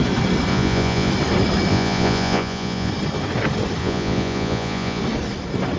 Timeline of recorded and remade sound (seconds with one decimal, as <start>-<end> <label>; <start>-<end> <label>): 0.0-0.5 recorded; 0.5-1.1 remade; 1.1-1.7 recorded; 1.7-2.9 remade; 2.9-3.8 recorded; 3.8-5.0 remade; 5.0-5.8 recorded